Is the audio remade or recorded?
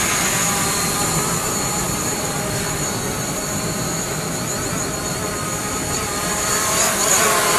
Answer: remade